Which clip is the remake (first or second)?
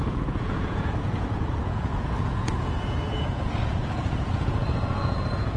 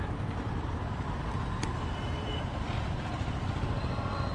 first